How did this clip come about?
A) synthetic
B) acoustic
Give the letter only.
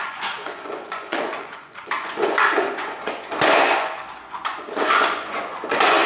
A